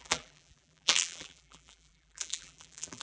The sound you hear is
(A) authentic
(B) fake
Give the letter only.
B